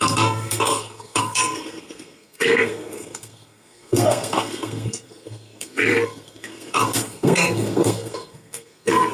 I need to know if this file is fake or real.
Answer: fake